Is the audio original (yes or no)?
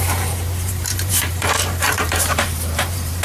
no